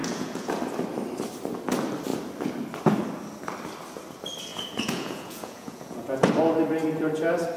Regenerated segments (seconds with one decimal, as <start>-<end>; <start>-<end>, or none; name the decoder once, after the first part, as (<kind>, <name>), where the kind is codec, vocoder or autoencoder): 0.0-0.6 (vocoder, Vocos); 4.5-6.4